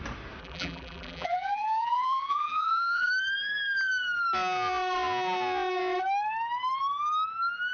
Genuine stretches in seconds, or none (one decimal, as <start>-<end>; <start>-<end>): 0.0-0.4; 3.1-7.7